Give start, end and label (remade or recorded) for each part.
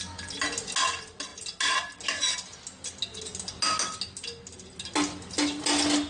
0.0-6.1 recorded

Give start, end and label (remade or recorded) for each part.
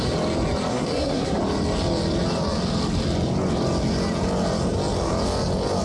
0.0-0.7 recorded; 0.7-1.4 remade; 1.4-5.8 recorded